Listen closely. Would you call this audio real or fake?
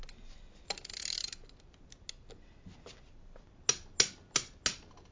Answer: real